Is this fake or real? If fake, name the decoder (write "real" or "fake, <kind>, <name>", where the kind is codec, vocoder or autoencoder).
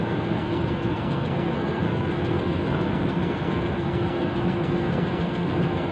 fake, codec, SNAC